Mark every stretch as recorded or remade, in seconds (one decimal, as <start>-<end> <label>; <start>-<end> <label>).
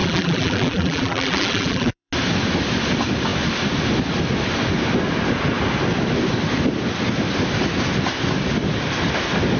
0.0-2.1 remade; 2.1-9.6 recorded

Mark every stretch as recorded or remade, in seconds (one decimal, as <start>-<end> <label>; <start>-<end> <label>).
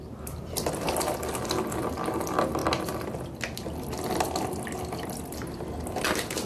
0.0-6.5 recorded